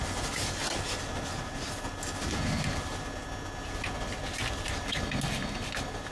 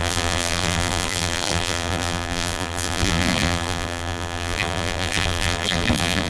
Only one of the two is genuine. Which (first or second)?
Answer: first